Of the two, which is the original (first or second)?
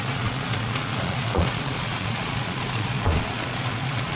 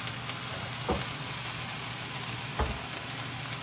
second